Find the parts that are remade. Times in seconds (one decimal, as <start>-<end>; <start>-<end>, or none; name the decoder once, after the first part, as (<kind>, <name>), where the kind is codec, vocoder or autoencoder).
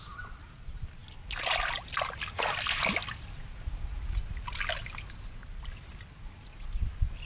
none